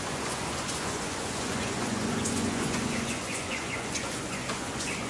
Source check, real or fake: fake